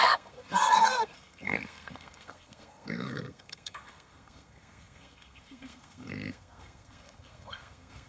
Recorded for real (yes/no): no